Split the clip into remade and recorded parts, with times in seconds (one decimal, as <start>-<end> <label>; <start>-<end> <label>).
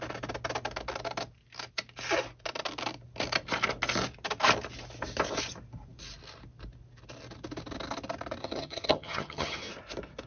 0.0-8.4 recorded; 8.4-9.7 remade; 9.7-10.3 recorded